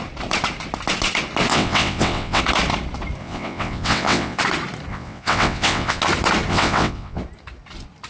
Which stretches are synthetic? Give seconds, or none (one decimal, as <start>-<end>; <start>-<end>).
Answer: 1.5-2.4; 3.2-4.4; 4.9-6.0; 6.5-7.2